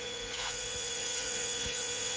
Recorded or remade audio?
remade